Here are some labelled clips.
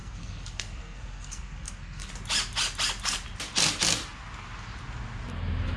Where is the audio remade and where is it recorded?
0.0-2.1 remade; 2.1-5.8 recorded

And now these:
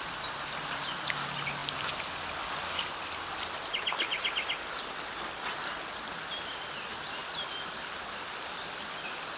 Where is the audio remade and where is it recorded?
0.0-9.4 recorded

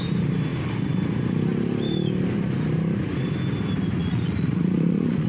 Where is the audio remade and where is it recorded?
0.0-4.0 recorded; 4.0-5.3 remade

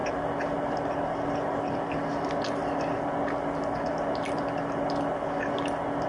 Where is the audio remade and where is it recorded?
0.0-6.1 recorded